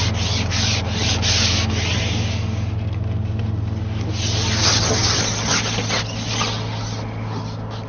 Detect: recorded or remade recorded